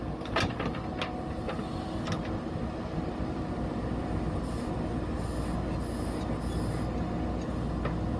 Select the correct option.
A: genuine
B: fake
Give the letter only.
A